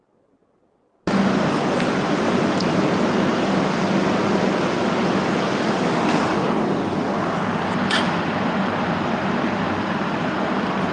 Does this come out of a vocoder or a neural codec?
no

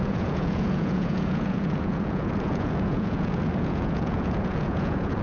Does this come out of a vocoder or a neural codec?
yes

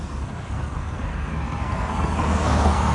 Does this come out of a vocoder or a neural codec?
yes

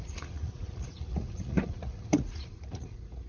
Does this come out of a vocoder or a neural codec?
yes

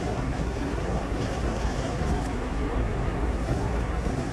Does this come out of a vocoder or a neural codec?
yes